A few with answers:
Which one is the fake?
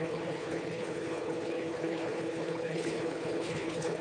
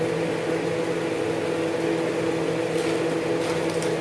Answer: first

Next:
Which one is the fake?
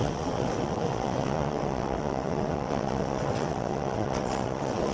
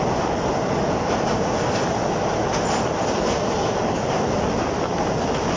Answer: first